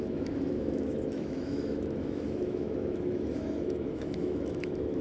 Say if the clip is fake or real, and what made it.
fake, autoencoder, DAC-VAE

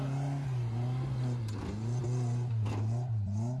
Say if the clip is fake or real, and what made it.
real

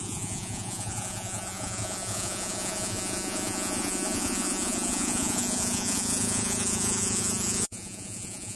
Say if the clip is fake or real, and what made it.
fake, vocoder, Vocos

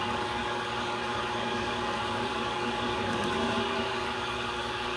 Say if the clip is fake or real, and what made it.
fake, codec, DAC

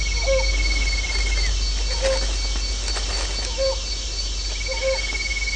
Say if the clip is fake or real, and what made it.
real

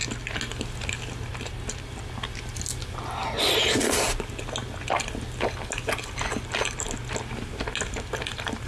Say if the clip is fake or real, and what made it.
real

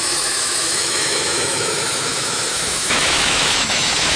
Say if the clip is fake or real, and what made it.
fake, autoencoder, DAC-VAE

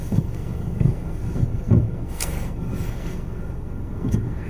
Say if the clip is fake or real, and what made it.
fake, codec, SNAC